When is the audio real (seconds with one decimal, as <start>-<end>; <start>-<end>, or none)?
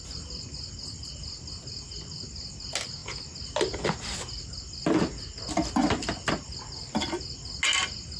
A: 0.0-8.2